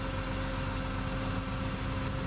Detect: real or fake real